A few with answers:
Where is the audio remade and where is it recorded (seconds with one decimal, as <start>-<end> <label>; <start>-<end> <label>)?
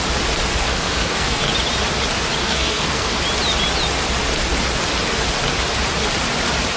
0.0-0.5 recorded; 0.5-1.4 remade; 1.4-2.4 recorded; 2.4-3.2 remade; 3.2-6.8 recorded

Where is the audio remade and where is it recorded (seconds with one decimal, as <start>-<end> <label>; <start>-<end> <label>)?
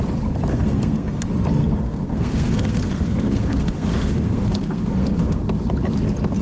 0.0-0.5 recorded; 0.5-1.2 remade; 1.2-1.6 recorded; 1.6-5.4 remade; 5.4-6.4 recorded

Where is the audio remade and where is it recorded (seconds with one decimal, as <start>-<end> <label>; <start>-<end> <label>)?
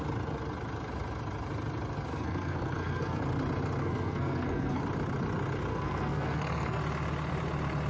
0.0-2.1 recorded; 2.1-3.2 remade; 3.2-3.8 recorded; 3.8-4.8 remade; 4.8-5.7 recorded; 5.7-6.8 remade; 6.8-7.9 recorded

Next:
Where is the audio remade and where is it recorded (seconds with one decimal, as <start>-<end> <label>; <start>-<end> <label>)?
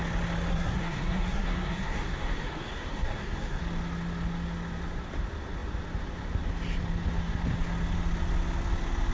0.0-0.5 recorded; 0.5-3.6 remade; 3.6-9.1 recorded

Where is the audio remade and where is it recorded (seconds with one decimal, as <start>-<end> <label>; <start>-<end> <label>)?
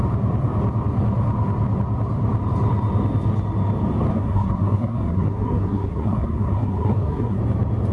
0.0-4.1 recorded; 4.1-7.4 remade; 7.4-7.9 recorded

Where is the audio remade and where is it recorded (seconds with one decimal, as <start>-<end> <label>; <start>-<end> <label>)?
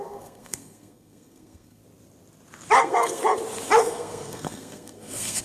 0.0-1.8 remade; 1.8-2.8 recorded; 2.8-3.2 remade; 3.2-3.8 recorded; 3.8-5.4 remade